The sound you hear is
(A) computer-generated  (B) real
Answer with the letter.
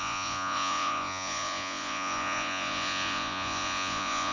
A